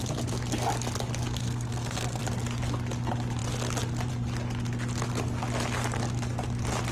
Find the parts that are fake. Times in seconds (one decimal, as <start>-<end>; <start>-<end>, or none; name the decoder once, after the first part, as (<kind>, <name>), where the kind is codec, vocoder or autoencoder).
1.4-2.2 (codec, SNAC)